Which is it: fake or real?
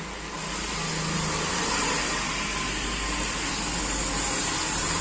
real